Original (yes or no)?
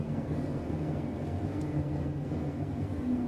no